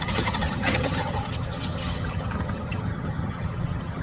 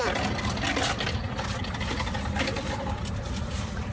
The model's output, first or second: first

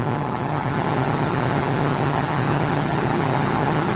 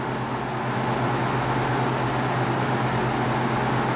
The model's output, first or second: first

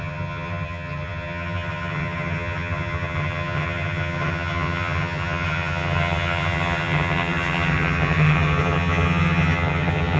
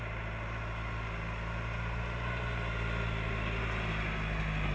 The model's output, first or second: first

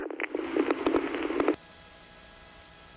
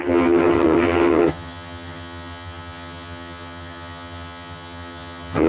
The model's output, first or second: second